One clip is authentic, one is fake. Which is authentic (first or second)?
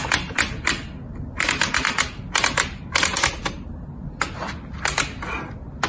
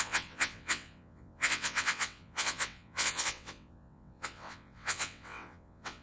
first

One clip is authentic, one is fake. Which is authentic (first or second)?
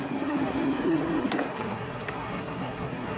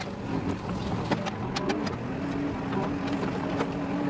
second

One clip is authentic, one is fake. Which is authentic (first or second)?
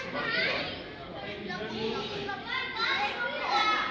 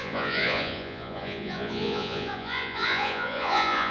first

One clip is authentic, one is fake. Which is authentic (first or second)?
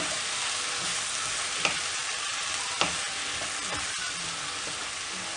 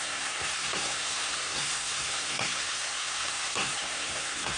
first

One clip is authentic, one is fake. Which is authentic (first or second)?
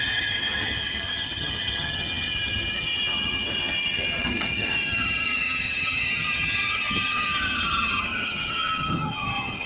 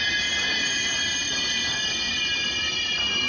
second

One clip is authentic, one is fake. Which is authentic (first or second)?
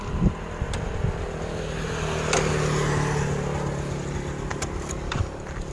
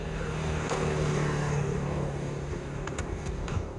first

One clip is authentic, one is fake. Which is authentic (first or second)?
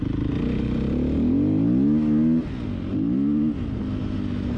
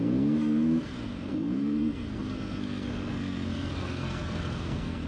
first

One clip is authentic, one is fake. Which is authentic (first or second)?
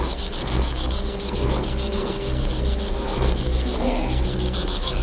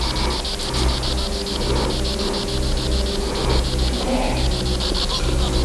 second